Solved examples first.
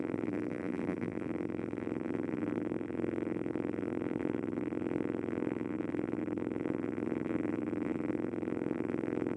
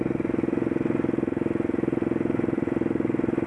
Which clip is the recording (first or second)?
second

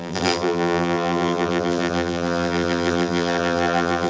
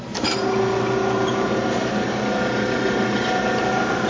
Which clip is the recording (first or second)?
second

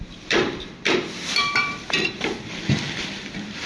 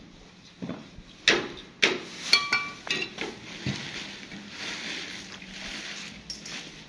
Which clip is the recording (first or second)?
second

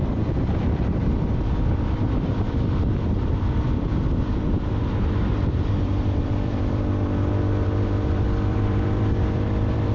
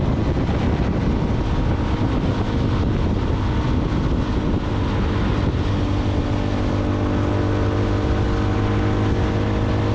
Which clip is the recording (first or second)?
second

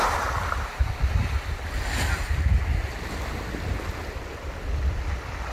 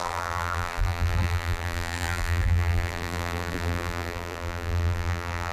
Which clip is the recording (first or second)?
first